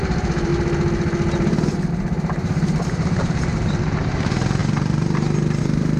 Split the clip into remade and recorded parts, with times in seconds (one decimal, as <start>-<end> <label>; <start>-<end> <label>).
0.0-0.5 remade; 0.5-1.9 recorded; 1.9-6.0 remade